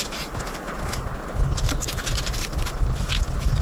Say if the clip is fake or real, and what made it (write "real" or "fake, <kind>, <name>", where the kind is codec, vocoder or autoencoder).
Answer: real